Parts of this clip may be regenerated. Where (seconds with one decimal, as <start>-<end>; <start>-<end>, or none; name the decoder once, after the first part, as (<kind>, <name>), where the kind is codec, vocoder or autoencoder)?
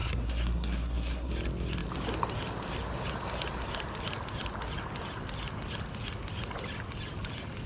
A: 0.0-1.3 (codec, SNAC)